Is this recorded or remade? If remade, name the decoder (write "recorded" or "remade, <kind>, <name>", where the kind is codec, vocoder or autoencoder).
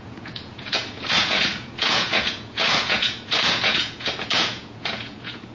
remade, vocoder, Vocos